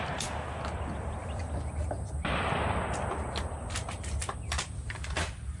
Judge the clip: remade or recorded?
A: recorded